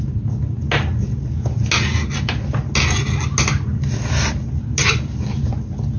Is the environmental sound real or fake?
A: real